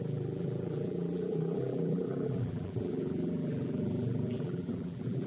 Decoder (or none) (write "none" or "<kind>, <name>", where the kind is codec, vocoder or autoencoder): vocoder, BigVGAN v2